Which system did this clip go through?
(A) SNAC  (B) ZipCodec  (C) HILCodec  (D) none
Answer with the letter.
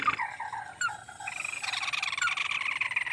D